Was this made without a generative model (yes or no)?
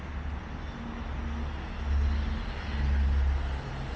yes